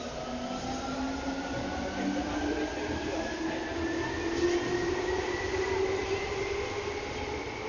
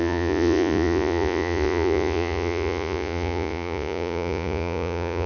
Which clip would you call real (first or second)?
first